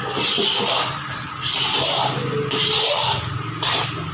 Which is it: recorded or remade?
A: recorded